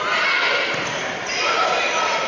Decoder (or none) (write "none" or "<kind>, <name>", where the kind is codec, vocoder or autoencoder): none